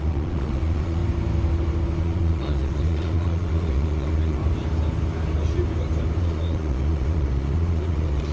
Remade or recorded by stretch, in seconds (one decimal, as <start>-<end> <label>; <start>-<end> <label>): 0.0-1.0 remade; 1.0-2.0 recorded; 2.0-4.4 remade; 4.4-6.2 recorded; 6.2-8.3 remade

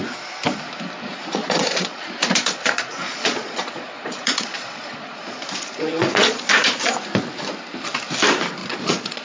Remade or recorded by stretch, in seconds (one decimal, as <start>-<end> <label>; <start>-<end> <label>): 0.0-1.4 recorded; 1.4-6.5 remade; 6.5-8.6 recorded; 8.6-9.2 remade

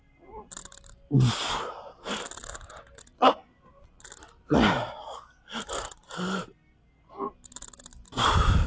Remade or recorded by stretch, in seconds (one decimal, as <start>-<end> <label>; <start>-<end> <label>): 0.0-8.7 recorded

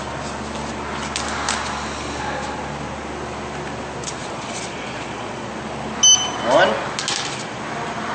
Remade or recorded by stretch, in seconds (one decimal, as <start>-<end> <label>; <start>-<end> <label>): 0.0-4.2 recorded; 4.2-5.5 remade; 5.5-8.1 recorded

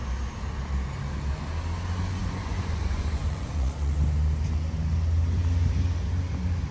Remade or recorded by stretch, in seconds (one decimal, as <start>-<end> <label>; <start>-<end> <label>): 0.0-2.2 recorded; 2.2-3.9 remade; 3.9-6.7 recorded

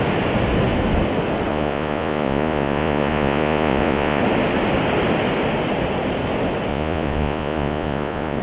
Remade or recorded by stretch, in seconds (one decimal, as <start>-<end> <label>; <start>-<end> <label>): 0.0-1.5 recorded; 1.5-4.2 remade; 4.2-6.7 recorded; 6.7-8.4 remade

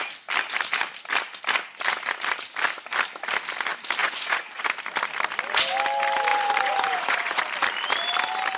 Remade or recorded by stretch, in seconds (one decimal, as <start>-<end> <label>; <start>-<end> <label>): 0.0-4.0 recorded; 4.0-4.6 remade; 4.6-6.3 recorded; 6.3-7.4 remade; 7.4-8.6 recorded

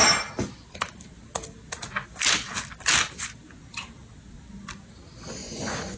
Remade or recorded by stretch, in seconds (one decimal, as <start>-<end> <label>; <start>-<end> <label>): 0.0-5.4 recorded; 5.4-6.0 remade